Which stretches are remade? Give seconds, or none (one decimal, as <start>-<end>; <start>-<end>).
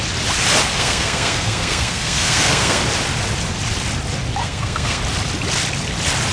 0.7-2.8; 4.4-5.0